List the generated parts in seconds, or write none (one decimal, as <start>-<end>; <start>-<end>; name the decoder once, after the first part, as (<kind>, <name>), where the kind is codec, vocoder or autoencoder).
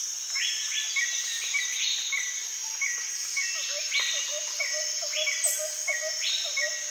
1.3-2.1 (vocoder, BigVGAN v2)